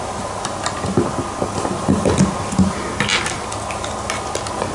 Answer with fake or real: real